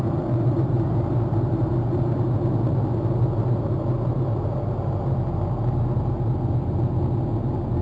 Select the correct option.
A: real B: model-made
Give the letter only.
A